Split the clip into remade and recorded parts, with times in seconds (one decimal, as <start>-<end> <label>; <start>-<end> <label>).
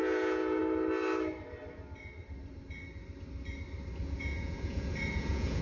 0.0-0.6 remade; 0.6-4.0 recorded; 4.0-5.6 remade